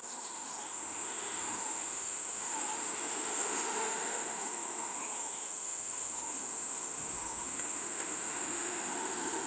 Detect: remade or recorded remade